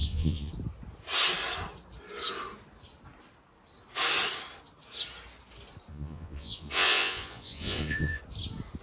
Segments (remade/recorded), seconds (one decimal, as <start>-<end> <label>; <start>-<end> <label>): 0.0-0.5 remade; 0.5-5.9 recorded; 5.9-8.2 remade; 8.2-8.8 recorded

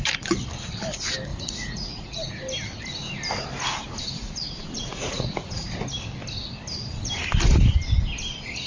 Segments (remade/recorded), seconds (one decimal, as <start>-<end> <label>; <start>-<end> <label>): 0.0-1.3 recorded; 1.3-2.3 remade; 2.3-4.2 recorded; 4.2-5.7 remade; 5.7-8.7 recorded

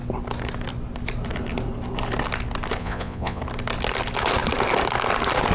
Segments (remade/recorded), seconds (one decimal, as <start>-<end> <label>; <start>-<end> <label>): 0.0-2.8 recorded; 2.8-3.4 remade; 3.4-5.5 recorded

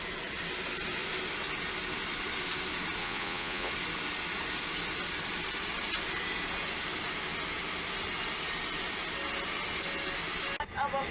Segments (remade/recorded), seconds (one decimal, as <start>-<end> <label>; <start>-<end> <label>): 0.0-3.0 recorded; 3.0-3.7 remade; 3.7-11.1 recorded

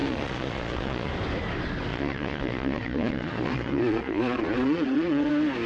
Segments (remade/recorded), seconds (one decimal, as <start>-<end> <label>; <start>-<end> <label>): 0.0-1.1 remade; 1.1-1.9 recorded; 1.9-5.3 remade; 5.3-5.7 recorded

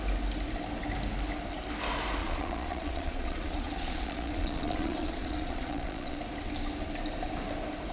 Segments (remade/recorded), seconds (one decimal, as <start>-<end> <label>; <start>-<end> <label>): 0.0-2.2 recorded; 2.2-6.2 remade; 6.2-7.9 recorded

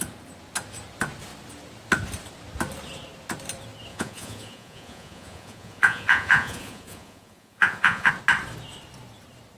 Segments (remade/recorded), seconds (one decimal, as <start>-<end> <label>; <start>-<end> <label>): 0.0-3.9 recorded; 3.9-8.1 remade; 8.1-9.6 recorded